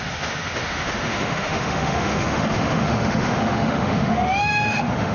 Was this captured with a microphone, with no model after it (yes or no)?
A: no